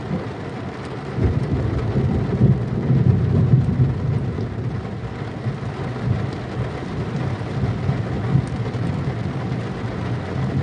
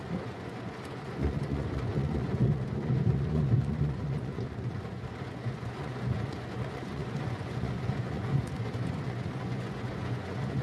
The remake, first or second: second